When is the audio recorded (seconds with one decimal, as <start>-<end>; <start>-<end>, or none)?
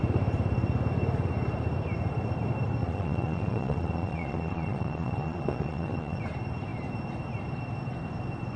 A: 0.0-2.8; 6.2-8.6